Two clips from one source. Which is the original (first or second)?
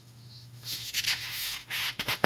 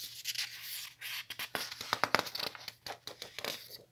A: second